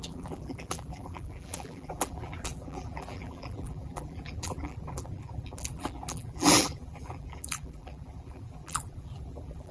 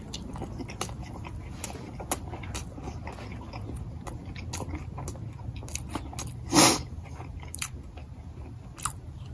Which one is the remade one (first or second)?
first